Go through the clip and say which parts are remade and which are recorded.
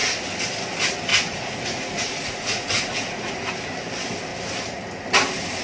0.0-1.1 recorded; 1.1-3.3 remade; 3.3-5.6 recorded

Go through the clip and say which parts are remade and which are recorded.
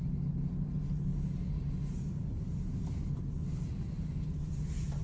0.0-5.0 recorded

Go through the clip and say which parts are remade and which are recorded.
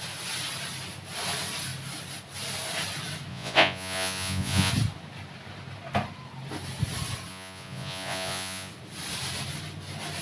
0.0-3.3 recorded; 3.3-4.7 remade; 4.7-7.3 recorded; 7.3-8.7 remade; 8.7-10.2 recorded